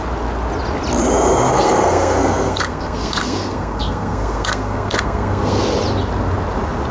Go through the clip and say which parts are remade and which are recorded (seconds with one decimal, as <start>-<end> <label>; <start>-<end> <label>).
0.0-1.5 recorded; 1.5-5.6 remade; 5.6-6.9 recorded